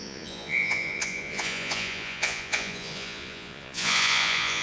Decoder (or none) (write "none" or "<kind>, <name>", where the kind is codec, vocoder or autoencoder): vocoder, Vocos